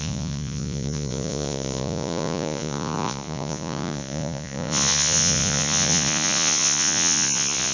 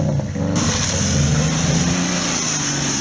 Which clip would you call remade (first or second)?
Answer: first